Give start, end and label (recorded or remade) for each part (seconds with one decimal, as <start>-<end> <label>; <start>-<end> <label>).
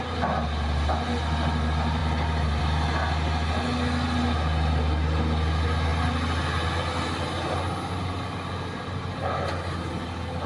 0.0-10.5 recorded